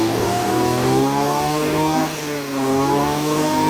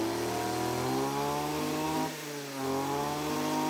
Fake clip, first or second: first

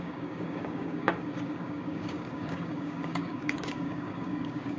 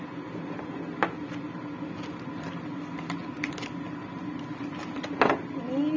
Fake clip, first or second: first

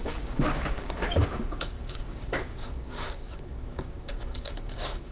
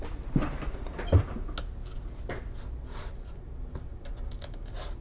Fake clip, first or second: first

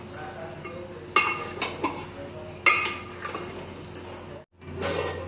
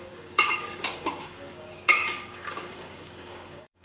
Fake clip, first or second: second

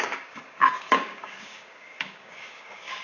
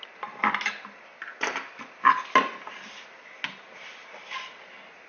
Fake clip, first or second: first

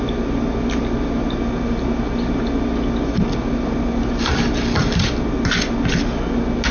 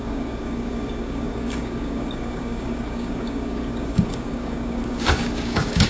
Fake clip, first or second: second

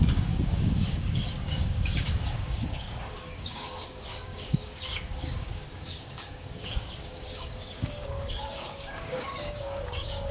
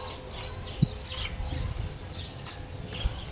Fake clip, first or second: first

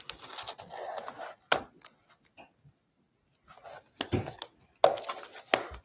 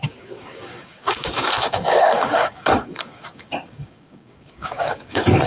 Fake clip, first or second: second